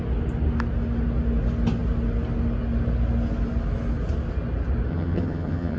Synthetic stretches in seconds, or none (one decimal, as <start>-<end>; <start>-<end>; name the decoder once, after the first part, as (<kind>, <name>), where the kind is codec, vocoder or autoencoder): 4.9-5.8 (vocoder, HiFi-GAN)